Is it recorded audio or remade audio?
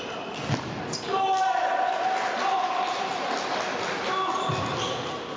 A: recorded